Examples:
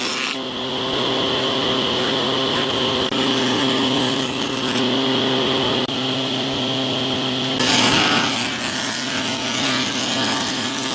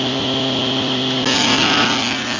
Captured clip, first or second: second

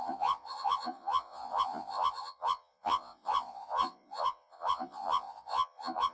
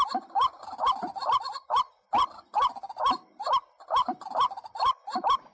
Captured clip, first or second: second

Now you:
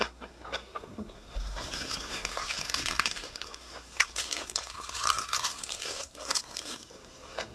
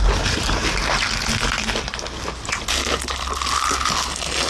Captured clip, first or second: second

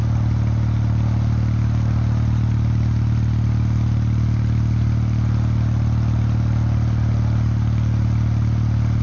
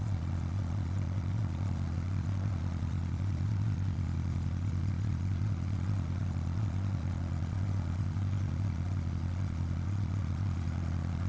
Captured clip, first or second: first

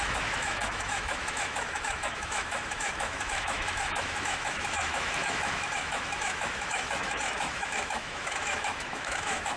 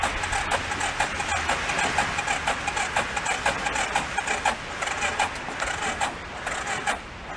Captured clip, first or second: second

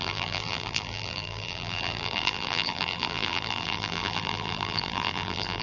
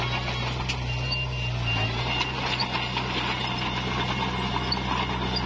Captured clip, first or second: second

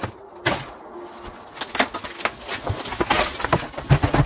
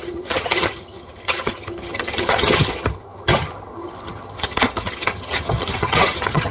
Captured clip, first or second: first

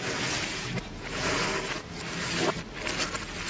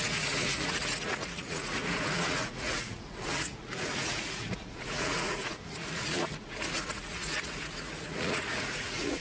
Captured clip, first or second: first